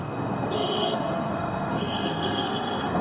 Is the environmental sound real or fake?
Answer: fake